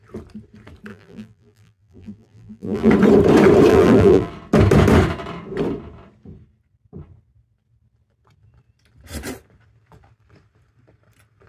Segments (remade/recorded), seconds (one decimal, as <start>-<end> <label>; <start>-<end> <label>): 0.0-0.9 recorded; 0.9-2.9 remade; 2.9-3.7 recorded; 3.7-4.3 remade; 4.3-11.5 recorded